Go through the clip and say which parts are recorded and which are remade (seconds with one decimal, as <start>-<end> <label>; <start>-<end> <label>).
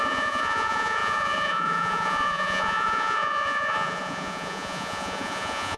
0.0-5.8 remade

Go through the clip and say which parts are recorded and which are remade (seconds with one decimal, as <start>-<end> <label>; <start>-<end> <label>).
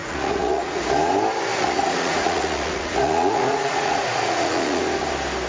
0.0-0.8 remade; 0.8-1.5 recorded; 1.5-4.8 remade; 4.8-5.5 recorded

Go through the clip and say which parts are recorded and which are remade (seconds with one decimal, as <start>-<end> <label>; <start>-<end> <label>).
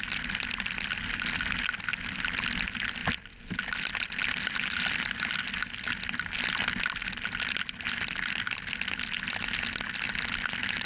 0.0-10.9 recorded